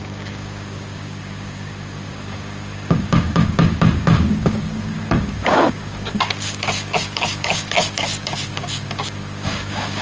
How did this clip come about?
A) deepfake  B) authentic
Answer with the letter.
A